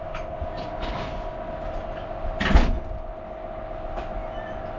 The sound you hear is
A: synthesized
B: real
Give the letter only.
B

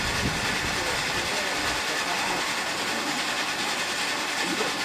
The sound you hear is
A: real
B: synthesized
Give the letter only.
A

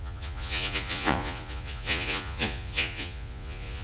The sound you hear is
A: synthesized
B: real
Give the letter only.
A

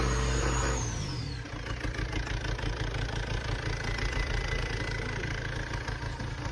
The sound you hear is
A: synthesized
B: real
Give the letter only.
B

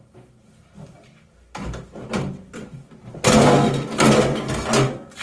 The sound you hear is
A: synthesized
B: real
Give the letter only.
B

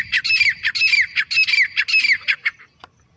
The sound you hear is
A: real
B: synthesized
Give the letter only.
A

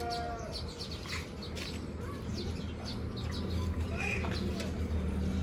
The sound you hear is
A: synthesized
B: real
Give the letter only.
B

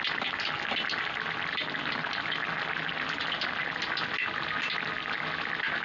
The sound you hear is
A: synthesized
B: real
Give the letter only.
B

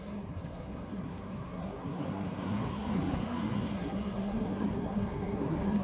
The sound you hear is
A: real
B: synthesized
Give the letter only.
B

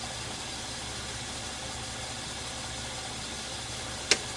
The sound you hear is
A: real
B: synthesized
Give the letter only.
A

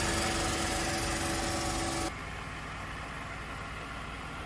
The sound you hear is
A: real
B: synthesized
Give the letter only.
A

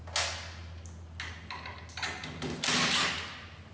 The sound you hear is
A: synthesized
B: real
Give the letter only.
B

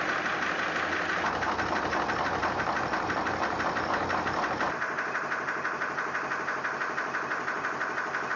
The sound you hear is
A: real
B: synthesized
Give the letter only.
A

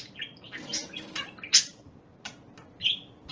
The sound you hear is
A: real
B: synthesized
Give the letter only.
A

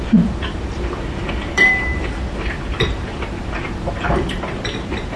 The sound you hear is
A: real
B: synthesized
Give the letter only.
B